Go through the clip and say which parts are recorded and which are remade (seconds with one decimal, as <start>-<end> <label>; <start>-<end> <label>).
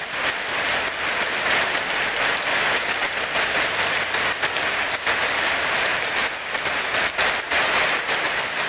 0.0-8.7 recorded